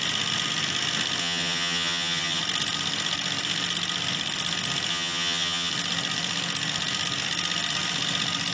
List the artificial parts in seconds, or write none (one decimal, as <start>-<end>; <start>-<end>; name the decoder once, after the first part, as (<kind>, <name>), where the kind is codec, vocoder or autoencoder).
1.2-2.4 (vocoder, HiFi-GAN); 4.9-5.7